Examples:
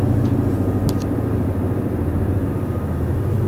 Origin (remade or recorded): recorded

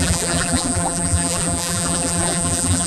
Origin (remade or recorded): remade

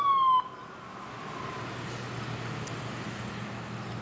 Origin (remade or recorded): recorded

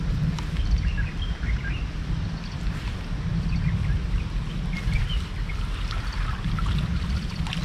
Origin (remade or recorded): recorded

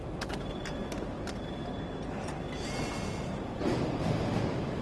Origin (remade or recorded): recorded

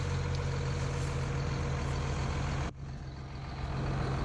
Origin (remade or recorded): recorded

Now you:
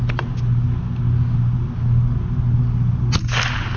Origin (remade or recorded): recorded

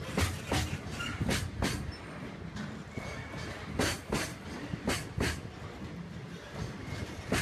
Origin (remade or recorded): recorded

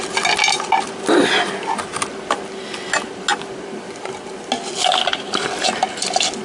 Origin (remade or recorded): recorded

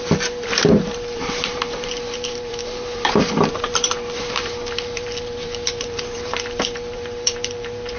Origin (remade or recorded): remade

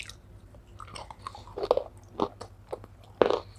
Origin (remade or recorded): recorded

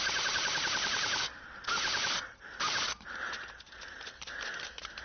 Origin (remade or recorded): remade